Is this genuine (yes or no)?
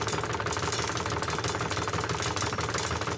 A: yes